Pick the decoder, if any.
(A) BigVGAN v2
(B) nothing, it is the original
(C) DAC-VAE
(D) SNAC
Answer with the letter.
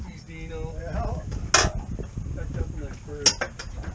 B